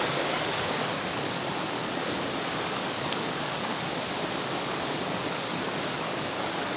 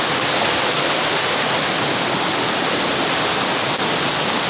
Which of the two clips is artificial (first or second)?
first